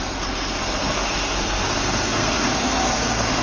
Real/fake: fake